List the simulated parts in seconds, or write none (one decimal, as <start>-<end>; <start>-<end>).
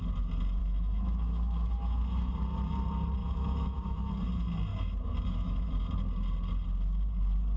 0.6-2.3; 3.2-4.1; 4.7-5.7